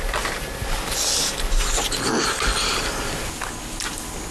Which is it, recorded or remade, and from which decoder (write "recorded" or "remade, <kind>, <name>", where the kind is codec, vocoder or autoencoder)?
recorded